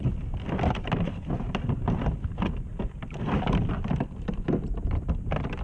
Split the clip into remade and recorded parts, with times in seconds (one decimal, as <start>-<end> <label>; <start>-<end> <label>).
0.0-5.6 recorded